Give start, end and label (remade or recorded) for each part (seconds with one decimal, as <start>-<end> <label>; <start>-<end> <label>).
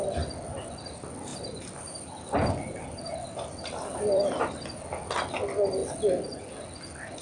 0.0-1.3 recorded; 1.3-4.4 remade; 4.4-7.2 recorded